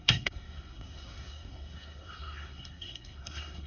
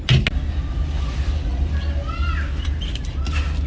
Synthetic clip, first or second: first